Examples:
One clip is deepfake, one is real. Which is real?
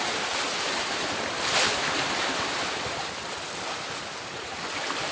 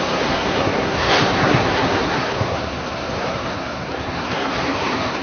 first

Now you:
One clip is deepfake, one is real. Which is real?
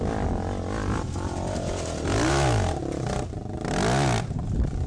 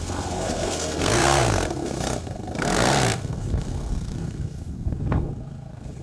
first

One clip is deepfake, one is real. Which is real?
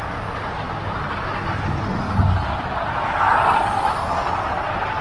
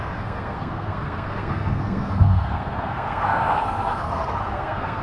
first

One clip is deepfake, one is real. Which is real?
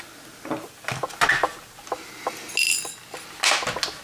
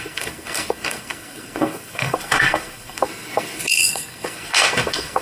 first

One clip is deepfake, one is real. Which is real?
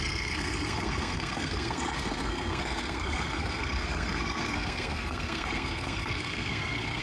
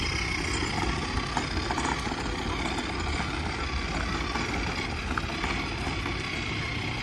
second